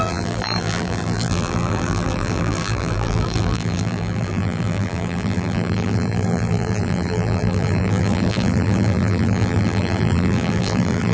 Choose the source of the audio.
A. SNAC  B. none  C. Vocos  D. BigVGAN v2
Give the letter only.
D